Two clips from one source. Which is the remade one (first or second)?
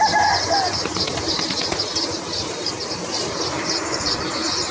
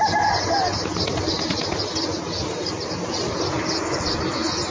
first